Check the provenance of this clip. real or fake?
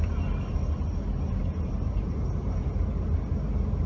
real